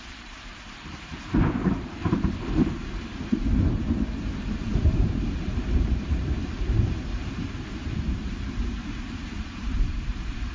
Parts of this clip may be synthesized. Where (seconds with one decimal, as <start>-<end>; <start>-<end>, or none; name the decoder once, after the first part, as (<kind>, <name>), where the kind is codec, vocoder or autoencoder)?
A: 0.0-10.5 (vocoder, BigVGAN v2)